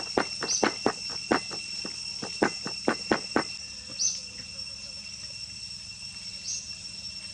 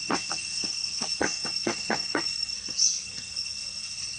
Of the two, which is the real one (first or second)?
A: first